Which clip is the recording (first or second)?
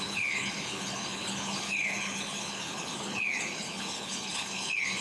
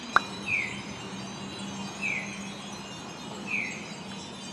second